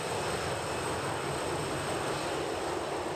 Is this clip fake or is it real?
real